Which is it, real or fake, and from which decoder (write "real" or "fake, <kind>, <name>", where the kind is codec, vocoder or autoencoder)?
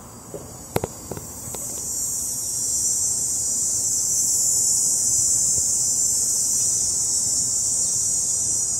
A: fake, vocoder, BigVGAN v2